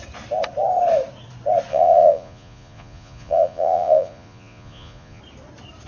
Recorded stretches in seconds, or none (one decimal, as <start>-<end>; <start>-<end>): 0.0-1.7; 5.2-5.9